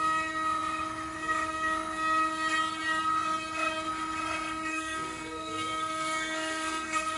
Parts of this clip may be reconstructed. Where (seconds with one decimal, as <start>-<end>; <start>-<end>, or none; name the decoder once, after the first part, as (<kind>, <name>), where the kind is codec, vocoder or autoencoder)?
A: 4.7-7.2 (codec, SNAC)